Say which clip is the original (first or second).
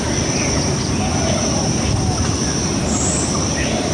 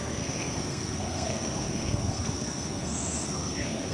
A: first